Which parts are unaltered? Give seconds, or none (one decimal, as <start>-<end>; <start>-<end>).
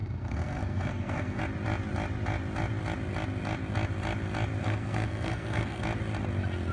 1.4-4.6; 5.8-6.7